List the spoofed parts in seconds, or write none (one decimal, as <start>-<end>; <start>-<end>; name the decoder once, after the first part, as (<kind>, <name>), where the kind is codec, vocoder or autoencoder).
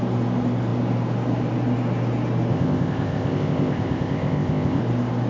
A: 2.5-4.8 (codec, ZipCodec)